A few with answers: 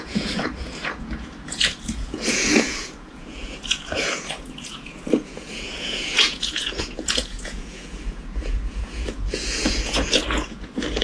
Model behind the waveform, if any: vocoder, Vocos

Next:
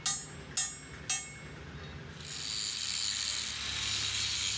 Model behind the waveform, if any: none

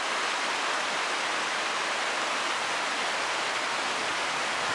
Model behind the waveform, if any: none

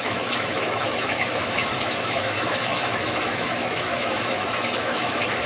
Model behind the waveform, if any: autoencoder, DAC-VAE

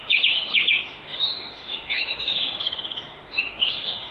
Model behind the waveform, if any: autoencoder, DAC-VAE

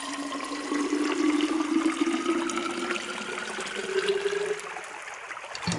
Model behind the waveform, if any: none